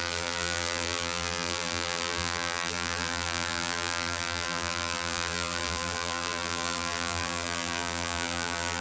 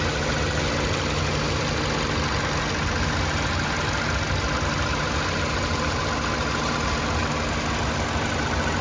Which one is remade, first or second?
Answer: first